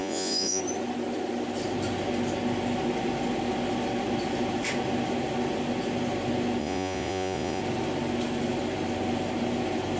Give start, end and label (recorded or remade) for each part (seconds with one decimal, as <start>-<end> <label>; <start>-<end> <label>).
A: 0.0-0.6 remade; 0.6-6.6 recorded; 6.6-7.6 remade; 7.6-10.0 recorded